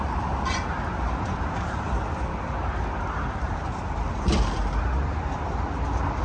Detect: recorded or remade recorded